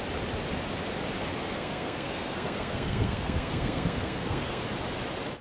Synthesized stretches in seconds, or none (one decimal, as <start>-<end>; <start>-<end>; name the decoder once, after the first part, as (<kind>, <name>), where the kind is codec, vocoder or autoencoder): 1.4-4.6 (codec, SNAC)

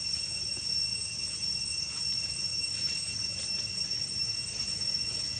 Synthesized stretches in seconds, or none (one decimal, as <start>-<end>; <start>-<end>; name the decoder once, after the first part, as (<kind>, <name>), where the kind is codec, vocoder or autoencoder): 0.0-2.5 (vocoder, Vocos); 4.6-5.4

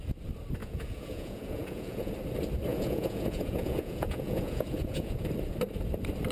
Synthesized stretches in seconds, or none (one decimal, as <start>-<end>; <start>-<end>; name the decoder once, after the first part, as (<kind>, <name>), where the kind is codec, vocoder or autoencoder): 0.6-2.1 (vocoder, Vocos); 2.7-5.3

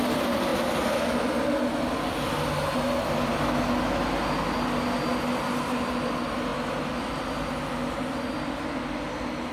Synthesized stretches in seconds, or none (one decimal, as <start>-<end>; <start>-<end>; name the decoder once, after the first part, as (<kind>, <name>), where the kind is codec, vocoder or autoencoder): none

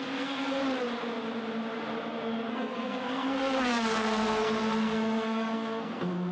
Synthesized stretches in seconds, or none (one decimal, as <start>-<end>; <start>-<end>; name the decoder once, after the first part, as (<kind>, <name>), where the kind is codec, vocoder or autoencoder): 0.0-0.6 (codec, SNAC); 2.5-6.3